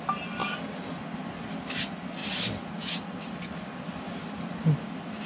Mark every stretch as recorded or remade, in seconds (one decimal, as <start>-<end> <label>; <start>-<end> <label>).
0.0-5.3 recorded